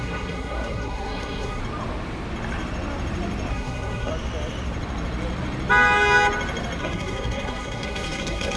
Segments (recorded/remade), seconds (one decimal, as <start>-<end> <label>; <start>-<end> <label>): 0.0-1.6 remade; 1.6-3.5 recorded; 3.5-4.1 remade; 4.1-6.8 recorded; 6.8-8.6 remade